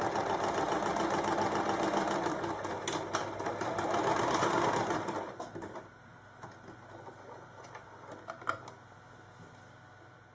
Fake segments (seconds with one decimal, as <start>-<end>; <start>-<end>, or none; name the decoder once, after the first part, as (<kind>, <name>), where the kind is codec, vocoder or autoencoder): none